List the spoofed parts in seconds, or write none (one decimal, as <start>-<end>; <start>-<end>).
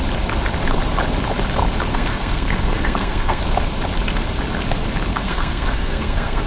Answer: 1.9-3.4; 5.1-6.5